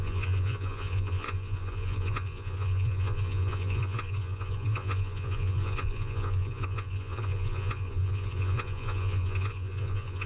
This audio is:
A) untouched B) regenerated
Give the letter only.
B